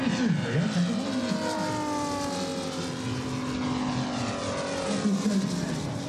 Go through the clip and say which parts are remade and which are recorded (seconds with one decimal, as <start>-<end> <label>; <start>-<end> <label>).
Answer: 0.0-6.1 recorded